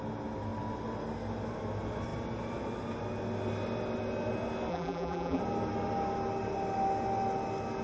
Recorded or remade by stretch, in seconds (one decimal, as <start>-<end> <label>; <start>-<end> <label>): 0.0-4.7 recorded; 4.7-5.4 remade; 5.4-7.8 recorded